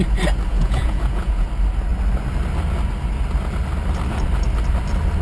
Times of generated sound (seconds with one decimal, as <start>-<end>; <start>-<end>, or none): 0.5-1.5